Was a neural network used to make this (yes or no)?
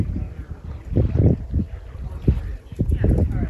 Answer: no